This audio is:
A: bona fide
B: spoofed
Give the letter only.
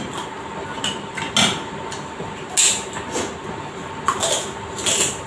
A